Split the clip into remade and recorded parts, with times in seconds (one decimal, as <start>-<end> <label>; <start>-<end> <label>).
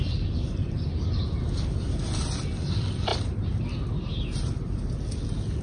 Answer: 0.0-5.6 recorded